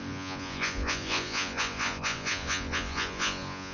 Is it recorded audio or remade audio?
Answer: remade